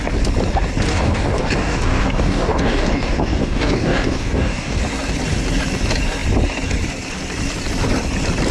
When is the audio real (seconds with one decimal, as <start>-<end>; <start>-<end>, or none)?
0.0-0.9; 4.8-8.5